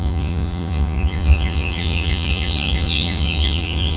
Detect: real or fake fake